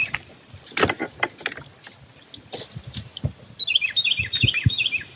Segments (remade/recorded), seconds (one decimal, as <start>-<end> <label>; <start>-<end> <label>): 0.0-0.5 recorded; 0.5-1.0 remade; 1.0-4.1 recorded; 4.1-5.2 remade